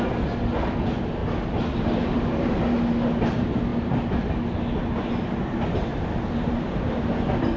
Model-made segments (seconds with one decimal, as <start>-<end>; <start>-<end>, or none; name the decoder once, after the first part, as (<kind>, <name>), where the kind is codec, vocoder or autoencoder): 3.7-4.3 (vocoder, BigVGAN v2)